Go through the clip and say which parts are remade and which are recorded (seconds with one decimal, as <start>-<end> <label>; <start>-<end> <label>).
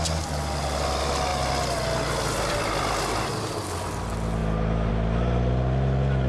0.0-6.3 recorded